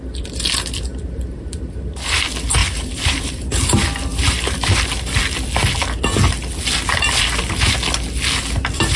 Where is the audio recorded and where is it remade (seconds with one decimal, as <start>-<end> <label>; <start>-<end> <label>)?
0.0-0.9 recorded; 0.9-2.0 remade; 2.0-2.6 recorded; 2.6-3.4 remade; 3.4-4.1 recorded; 4.1-4.7 remade; 4.7-9.0 recorded